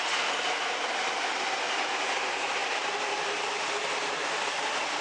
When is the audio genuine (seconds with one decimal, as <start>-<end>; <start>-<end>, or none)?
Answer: 0.0-5.0